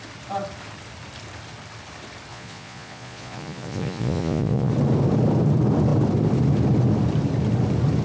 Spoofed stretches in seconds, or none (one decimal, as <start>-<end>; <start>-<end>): 2.3-4.7